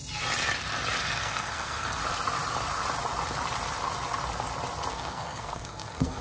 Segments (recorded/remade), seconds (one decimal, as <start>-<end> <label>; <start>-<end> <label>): 0.0-1.0 recorded; 1.0-2.0 remade; 2.0-4.9 recorded; 4.9-6.2 remade